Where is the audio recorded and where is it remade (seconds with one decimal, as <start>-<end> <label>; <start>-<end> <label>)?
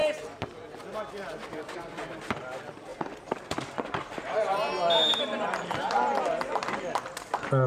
0.0-2.9 recorded; 2.9-4.2 remade; 4.2-7.7 recorded